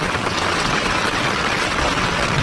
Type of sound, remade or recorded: remade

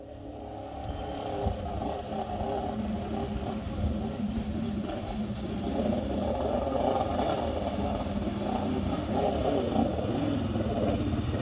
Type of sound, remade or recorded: recorded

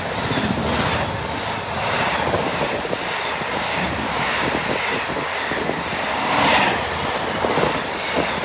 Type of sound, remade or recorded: recorded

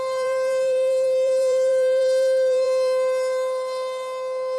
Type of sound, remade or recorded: remade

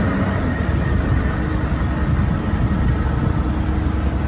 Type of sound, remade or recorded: recorded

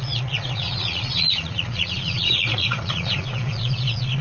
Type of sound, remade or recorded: remade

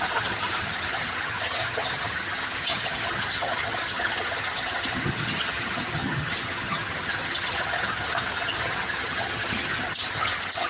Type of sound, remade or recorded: remade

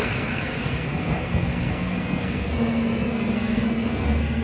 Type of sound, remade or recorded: remade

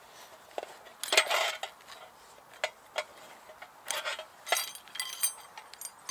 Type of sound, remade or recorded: recorded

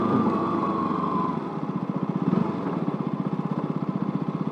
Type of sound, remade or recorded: recorded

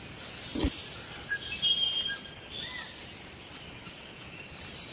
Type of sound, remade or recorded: remade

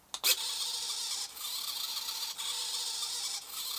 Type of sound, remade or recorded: recorded